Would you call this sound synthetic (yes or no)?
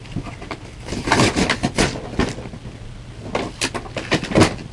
no